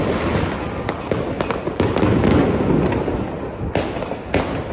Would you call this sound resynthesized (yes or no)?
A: no